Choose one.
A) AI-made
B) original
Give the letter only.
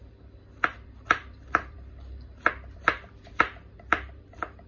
A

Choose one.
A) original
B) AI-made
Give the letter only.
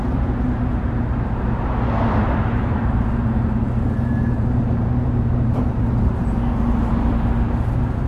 B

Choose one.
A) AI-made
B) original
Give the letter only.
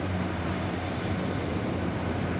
A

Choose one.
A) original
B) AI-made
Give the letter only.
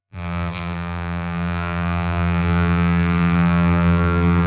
B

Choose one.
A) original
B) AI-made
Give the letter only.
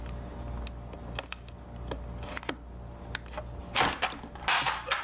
A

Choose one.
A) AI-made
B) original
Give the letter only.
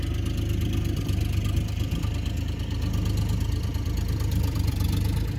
B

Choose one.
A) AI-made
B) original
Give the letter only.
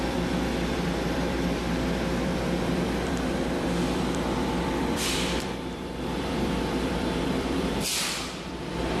A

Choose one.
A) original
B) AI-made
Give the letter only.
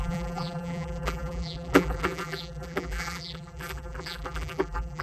B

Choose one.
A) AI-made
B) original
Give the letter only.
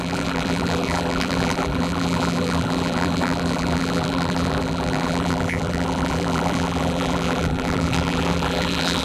A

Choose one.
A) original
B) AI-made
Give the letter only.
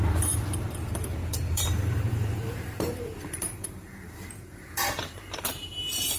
B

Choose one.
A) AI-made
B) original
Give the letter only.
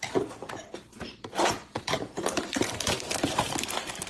A